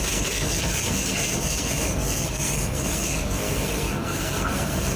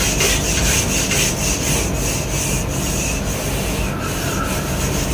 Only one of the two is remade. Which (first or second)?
first